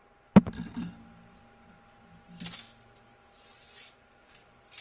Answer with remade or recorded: recorded